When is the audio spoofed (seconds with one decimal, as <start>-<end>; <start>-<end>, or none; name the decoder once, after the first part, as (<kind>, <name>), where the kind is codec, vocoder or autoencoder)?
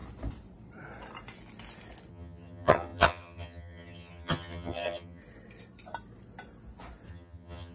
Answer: 2.1-5.2 (vocoder, HiFi-GAN); 7.1-7.7